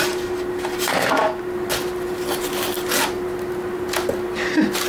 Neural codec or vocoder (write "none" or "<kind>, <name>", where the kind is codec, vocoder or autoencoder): none